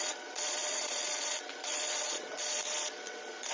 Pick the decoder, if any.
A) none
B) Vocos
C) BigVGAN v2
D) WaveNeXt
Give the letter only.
B